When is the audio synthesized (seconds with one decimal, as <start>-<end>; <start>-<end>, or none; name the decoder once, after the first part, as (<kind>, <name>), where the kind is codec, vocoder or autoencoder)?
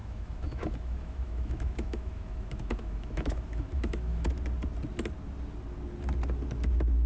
0.0-4.3 (autoencoder, DAC-VAE)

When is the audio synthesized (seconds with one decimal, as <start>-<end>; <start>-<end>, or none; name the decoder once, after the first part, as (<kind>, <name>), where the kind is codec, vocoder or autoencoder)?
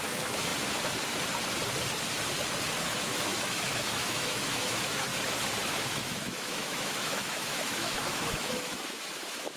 0.0-0.5 (autoencoder, DAC-VAE); 2.8-5.1; 5.6-9.6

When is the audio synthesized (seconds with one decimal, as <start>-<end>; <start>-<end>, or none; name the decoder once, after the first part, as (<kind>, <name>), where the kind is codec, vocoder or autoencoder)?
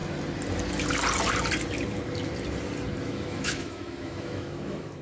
3.0-5.0 (autoencoder, DAC-VAE)